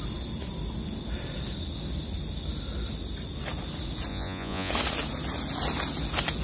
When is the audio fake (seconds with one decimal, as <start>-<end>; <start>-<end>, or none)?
4.1-4.7